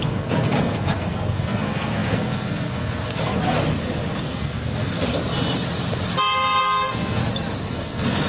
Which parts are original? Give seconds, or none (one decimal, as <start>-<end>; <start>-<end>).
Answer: 3.3-4.2; 5.1-6.6; 7.2-7.7